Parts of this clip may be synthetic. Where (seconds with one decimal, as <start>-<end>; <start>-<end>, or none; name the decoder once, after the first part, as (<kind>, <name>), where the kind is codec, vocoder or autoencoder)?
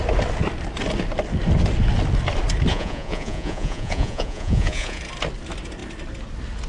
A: 2.7-5.0 (vocoder, Vocos)